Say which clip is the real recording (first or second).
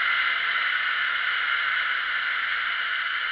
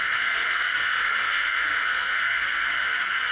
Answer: first